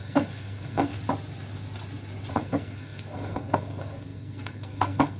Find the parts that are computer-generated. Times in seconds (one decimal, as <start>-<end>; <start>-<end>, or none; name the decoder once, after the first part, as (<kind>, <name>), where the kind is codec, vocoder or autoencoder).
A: 0.0-0.9 (codec, SNAC); 2.3-5.2